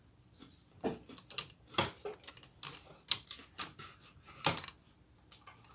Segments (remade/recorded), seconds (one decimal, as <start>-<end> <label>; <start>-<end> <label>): 0.0-5.7 recorded